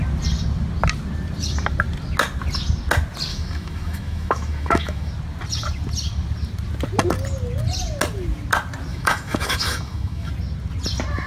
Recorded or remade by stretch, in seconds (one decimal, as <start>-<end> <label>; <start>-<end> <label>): 0.0-3.3 recorded; 3.3-5.1 remade; 5.1-8.9 recorded; 8.9-10.3 remade; 10.3-11.3 recorded